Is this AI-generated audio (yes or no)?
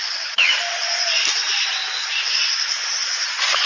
no